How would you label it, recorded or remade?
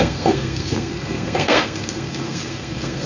remade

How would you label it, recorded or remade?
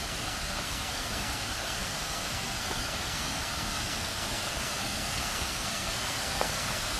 remade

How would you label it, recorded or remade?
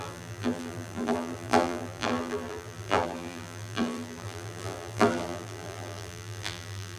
remade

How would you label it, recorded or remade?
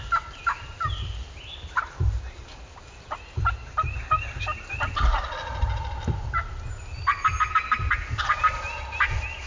recorded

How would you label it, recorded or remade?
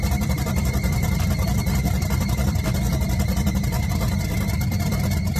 remade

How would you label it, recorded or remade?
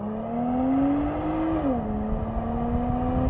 recorded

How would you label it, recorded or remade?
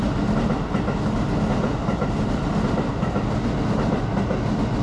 recorded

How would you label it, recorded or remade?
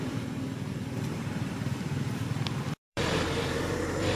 remade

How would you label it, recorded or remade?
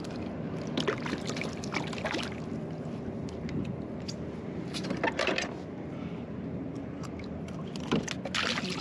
recorded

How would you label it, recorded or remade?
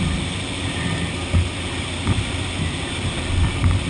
remade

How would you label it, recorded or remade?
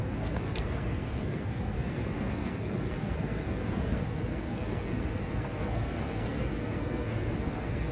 remade